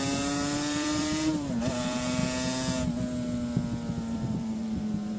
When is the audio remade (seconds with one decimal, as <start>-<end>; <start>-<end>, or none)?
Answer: 0.0-2.2; 4.0-5.2